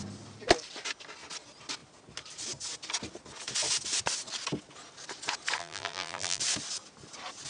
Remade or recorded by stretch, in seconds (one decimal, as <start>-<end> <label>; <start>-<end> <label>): 0.0-5.6 recorded; 5.6-6.4 remade; 6.4-7.5 recorded